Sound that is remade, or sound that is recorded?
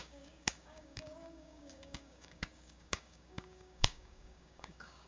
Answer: remade